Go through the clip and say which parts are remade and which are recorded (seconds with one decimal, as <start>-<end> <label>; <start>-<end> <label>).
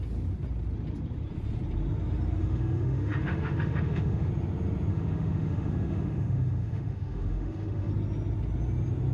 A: 0.0-2.4 recorded; 2.4-4.3 remade; 4.3-4.9 recorded; 4.9-7.9 remade; 7.9-9.1 recorded